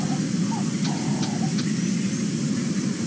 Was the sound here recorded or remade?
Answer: recorded